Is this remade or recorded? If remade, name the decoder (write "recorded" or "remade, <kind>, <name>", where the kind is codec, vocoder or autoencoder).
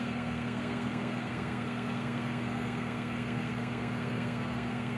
remade, codec, SNAC